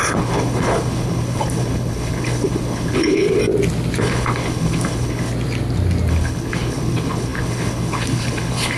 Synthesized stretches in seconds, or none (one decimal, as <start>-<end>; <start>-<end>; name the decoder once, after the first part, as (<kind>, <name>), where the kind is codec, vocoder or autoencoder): 0.0-3.4 (codec, HILCodec); 4.0-5.3; 6.1-8.8